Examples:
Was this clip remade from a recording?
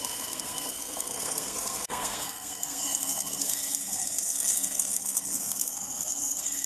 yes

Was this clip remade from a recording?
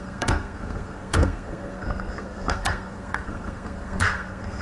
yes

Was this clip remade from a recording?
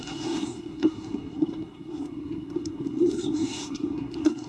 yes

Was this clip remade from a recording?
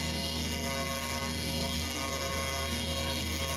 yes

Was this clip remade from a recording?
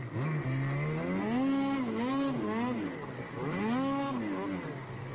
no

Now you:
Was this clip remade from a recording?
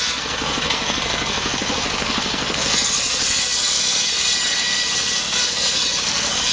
yes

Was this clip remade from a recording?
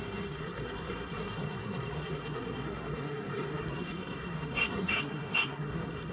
yes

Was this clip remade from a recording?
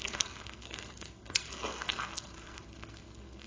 yes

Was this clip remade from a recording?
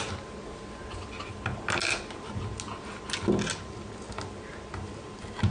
no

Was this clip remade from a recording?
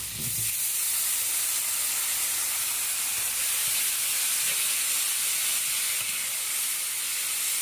no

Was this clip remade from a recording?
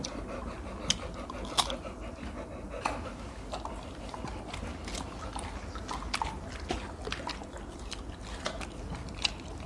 no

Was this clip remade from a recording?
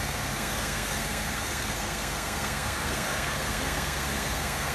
yes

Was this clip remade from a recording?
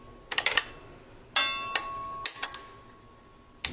no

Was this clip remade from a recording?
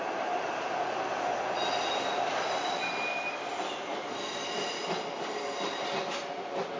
no